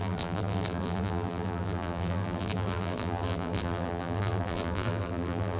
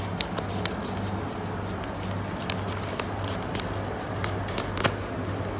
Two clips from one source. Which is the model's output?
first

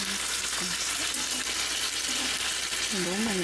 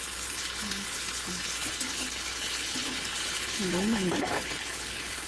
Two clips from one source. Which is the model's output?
second